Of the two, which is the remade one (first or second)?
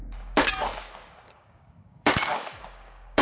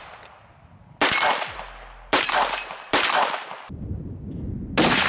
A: first